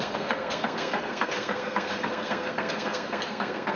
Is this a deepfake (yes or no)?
yes